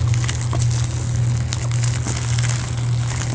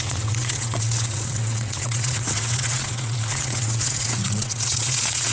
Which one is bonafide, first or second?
first